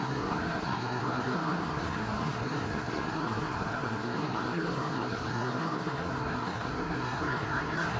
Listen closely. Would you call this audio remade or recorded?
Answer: remade